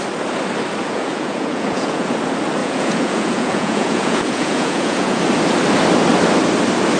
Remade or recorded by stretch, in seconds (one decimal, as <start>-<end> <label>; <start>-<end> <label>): 0.0-0.8 recorded; 0.8-2.2 remade; 2.2-2.6 recorded; 2.6-5.2 remade; 5.2-7.0 recorded